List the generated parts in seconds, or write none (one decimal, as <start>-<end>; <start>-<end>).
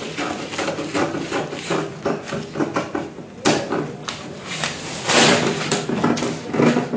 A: 4.0-5.1